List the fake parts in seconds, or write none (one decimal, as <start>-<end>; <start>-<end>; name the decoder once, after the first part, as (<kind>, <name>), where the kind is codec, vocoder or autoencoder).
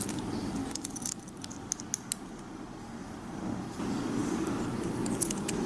none